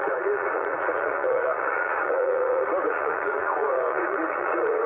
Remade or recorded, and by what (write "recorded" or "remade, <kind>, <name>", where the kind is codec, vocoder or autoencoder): remade, vocoder, Vocos